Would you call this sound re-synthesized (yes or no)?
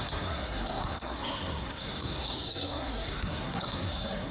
yes